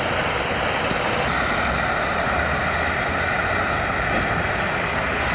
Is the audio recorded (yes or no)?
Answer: yes